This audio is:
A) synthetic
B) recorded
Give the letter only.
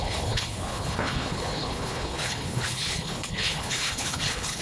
A